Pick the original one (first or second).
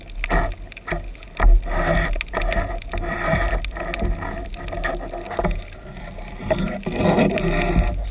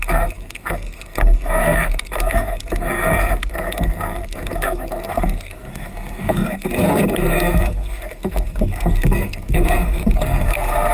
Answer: first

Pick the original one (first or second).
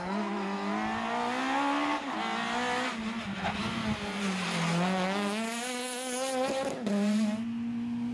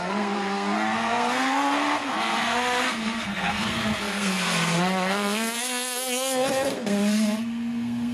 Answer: first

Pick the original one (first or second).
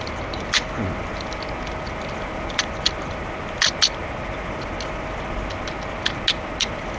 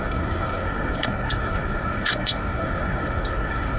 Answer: first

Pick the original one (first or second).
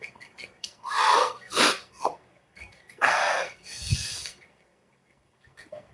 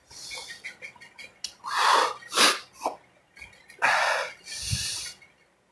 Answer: second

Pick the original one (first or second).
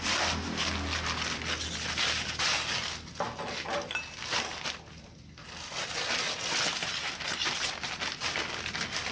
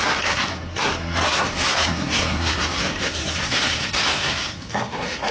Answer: first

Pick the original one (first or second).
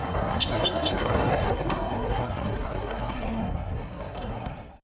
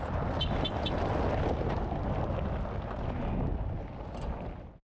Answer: second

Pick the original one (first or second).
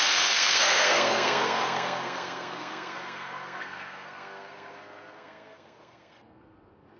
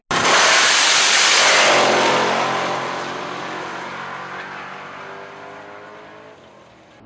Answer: second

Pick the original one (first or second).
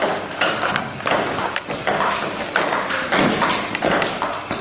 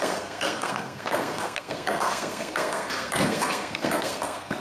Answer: first